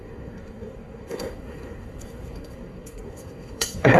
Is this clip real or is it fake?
fake